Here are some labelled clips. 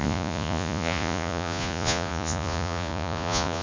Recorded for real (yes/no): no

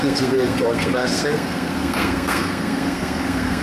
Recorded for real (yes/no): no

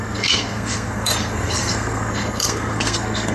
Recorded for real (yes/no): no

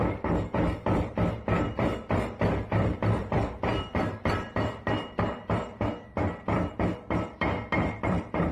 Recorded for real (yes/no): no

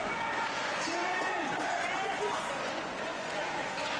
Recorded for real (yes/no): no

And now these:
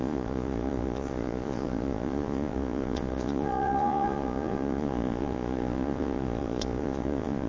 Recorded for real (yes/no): no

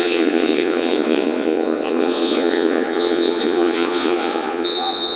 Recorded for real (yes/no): no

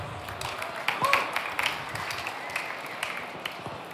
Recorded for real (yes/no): yes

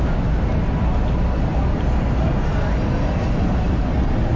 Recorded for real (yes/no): yes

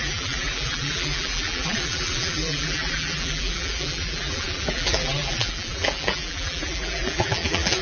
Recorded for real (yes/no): no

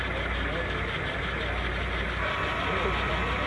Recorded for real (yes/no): yes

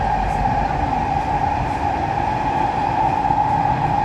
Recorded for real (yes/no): yes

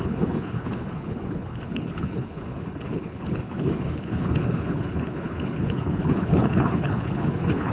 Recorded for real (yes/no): no